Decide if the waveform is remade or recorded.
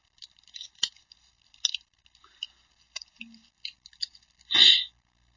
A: recorded